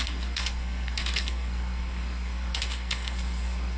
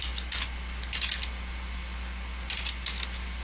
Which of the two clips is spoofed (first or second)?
first